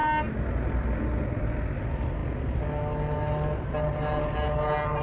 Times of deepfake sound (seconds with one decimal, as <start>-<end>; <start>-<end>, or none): none